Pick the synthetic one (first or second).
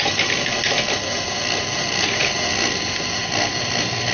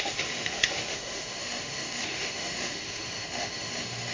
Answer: second